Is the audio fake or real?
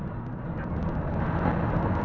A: real